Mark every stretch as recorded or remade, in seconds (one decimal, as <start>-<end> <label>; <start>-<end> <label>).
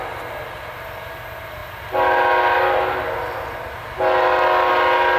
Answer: 0.0-5.2 recorded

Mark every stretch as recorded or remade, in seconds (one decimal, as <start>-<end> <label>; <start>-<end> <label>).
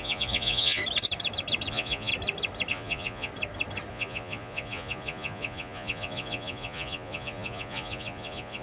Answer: 0.0-0.8 remade; 0.8-1.7 recorded; 1.7-2.1 remade; 2.1-2.7 recorded; 2.7-3.3 remade; 3.3-3.9 recorded; 3.9-8.6 remade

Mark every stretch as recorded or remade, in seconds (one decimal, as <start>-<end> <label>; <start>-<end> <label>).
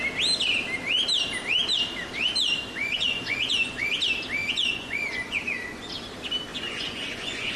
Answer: 0.0-2.8 recorded; 2.8-3.9 remade; 3.9-4.4 recorded; 4.4-5.9 remade; 5.9-6.5 recorded; 6.5-7.6 remade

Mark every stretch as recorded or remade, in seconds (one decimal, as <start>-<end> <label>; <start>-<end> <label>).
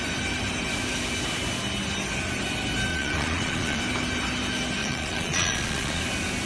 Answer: 0.0-2.9 recorded; 2.9-3.8 remade; 3.8-4.8 recorded; 4.8-6.0 remade; 6.0-6.5 recorded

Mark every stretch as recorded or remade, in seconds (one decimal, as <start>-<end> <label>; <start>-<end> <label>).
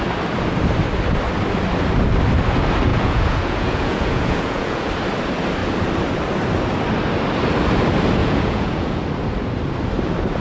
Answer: 0.0-2.9 recorded; 2.9-4.9 remade; 4.9-8.2 recorded; 8.2-9.0 remade; 9.0-10.4 recorded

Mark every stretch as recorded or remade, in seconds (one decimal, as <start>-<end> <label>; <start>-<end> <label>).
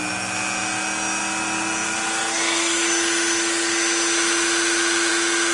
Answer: 0.0-5.5 recorded